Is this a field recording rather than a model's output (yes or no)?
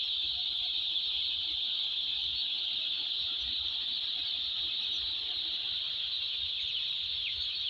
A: no